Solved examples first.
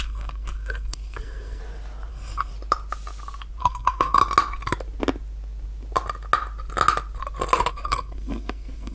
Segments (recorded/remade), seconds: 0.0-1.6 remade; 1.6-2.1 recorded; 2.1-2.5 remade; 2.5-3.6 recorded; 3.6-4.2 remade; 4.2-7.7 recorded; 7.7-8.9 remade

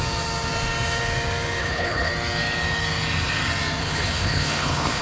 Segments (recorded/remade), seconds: 0.0-1.6 recorded; 1.6-2.1 remade; 2.1-3.8 recorded; 3.8-5.0 remade